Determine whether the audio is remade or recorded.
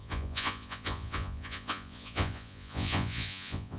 remade